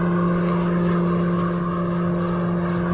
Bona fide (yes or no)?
yes